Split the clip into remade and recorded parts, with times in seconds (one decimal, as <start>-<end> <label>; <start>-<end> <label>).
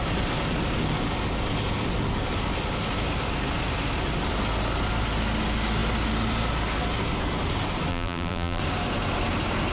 0.0-7.9 recorded; 7.9-8.6 remade; 8.6-9.7 recorded